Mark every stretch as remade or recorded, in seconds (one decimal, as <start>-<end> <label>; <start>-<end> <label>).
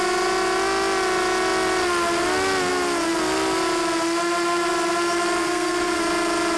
0.0-5.4 recorded; 5.4-6.0 remade; 6.0-6.6 recorded